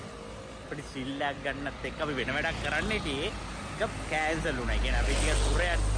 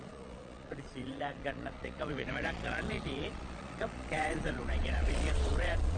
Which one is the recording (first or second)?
first